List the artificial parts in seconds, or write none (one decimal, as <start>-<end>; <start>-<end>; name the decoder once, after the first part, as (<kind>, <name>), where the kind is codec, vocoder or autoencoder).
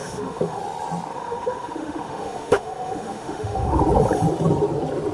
0.0-0.6 (autoencoder, DAC-VAE); 1.1-3.8